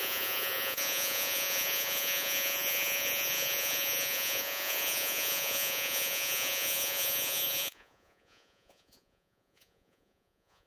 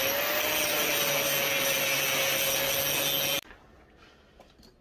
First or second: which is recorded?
second